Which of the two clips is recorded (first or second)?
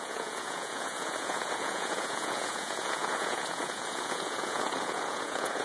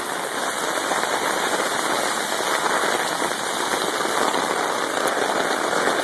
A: second